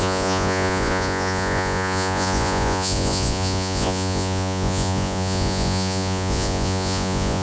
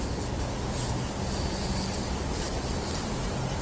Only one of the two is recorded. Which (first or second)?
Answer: second